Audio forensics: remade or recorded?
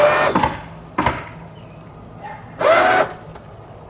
recorded